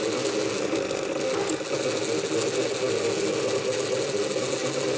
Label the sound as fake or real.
real